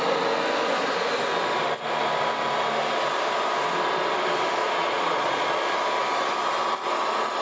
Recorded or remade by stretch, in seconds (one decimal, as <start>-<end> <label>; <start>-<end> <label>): 0.0-4.6 recorded; 4.6-5.6 remade; 5.6-7.4 recorded